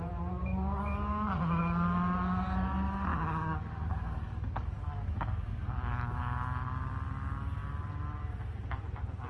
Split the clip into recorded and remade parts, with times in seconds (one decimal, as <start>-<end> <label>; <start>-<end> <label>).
0.0-0.4 recorded; 0.4-1.6 remade; 1.6-3.1 recorded; 3.1-6.2 remade; 6.2-9.3 recorded